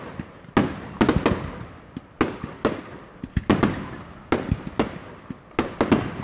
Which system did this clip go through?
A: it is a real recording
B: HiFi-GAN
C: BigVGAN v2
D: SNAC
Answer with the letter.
A